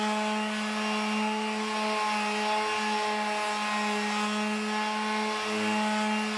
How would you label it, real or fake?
real